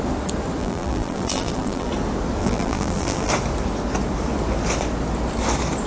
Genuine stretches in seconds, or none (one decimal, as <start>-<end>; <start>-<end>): 0.0-0.6; 1.9-2.4; 3.3-5.9

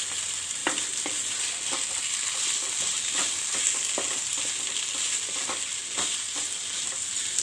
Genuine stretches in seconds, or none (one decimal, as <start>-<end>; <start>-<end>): 0.0-7.4

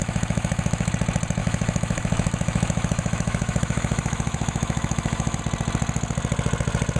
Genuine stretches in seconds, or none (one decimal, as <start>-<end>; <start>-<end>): 0.9-1.4; 5.4-7.0

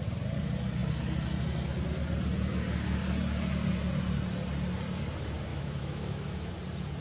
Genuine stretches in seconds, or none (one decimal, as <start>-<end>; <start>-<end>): 0.0-5.5; 6.5-7.0

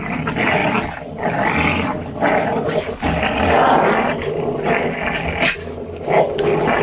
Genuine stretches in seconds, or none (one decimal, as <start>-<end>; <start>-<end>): 0.0-6.8

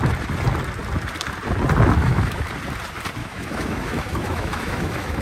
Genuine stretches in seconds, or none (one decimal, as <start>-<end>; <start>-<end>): 0.0-2.0; 2.5-3.2

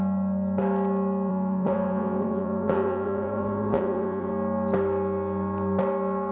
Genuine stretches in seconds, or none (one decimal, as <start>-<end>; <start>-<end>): 0.0-1.3; 4.3-6.3